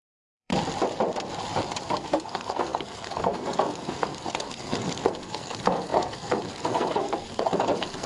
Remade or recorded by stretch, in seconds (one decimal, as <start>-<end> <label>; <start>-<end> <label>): 0.0-0.5 remade; 0.5-1.8 recorded; 1.8-8.1 remade